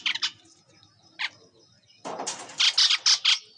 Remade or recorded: recorded